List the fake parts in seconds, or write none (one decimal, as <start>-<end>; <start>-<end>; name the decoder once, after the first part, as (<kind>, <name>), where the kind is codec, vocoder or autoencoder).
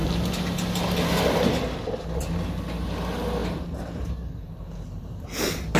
3.4-5.8 (vocoder, BigVGAN v2)